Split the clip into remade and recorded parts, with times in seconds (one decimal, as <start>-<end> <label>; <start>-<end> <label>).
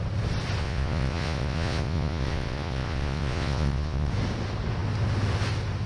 0.0-0.6 recorded; 0.6-4.1 remade; 4.1-5.9 recorded